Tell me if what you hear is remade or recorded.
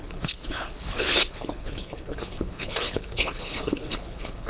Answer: remade